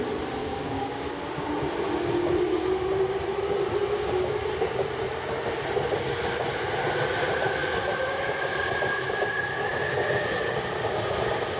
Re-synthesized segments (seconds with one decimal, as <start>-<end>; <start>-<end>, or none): 0.4-1.2